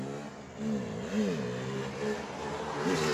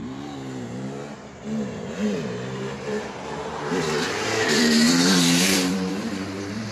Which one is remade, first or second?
second